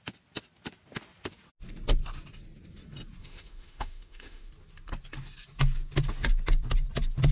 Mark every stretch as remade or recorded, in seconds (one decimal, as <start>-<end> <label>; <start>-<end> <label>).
0.0-3.2 recorded; 3.2-4.5 remade; 4.5-7.3 recorded